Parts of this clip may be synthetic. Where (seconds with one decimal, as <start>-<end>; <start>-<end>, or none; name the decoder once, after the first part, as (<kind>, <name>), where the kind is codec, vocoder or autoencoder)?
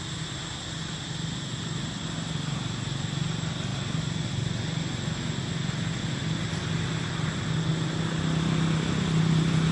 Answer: none